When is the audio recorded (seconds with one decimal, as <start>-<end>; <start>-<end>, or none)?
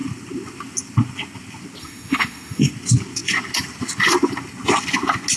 0.0-1.8; 2.7-5.4